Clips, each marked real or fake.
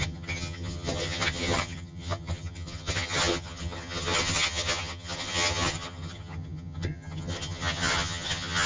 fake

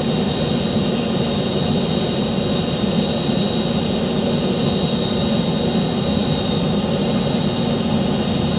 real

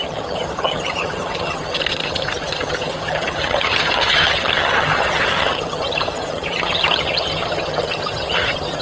fake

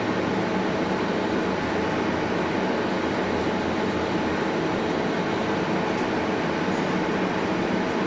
real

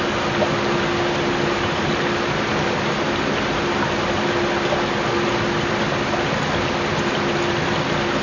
real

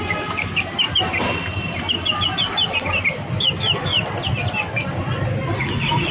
real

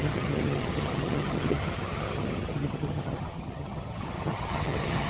fake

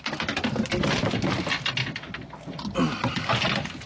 real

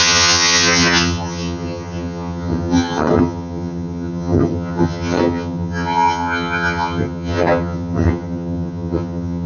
fake